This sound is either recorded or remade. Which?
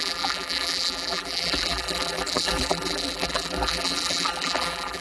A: remade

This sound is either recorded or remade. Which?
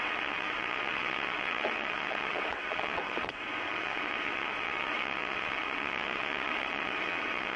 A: remade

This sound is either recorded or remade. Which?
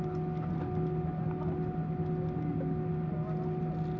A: recorded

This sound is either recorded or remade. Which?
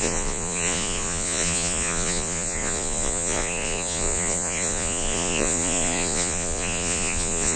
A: remade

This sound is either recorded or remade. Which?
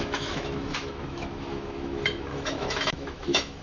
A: remade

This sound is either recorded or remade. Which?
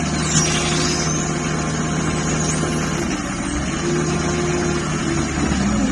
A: recorded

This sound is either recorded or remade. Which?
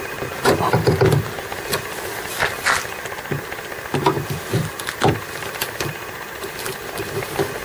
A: recorded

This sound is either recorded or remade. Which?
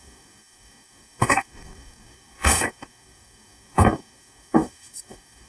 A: remade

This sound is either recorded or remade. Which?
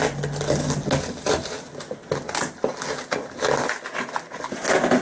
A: recorded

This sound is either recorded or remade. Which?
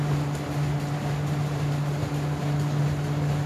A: recorded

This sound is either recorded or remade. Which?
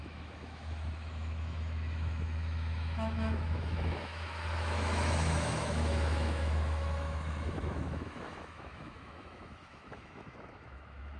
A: remade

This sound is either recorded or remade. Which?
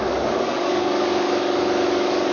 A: remade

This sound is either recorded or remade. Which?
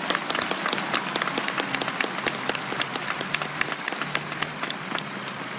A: remade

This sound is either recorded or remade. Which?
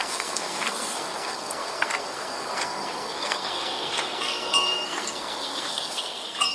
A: remade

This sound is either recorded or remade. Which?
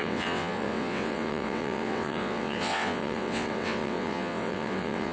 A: remade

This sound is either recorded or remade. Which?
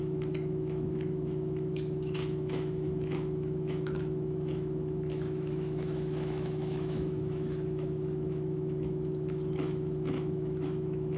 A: remade